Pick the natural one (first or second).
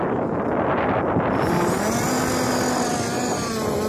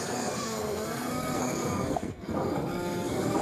first